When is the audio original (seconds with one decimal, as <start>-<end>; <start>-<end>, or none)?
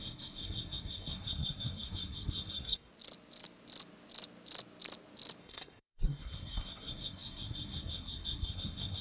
2.9-5.4